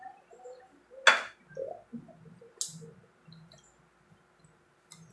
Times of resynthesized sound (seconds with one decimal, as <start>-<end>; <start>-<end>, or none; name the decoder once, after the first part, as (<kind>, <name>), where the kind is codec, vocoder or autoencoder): none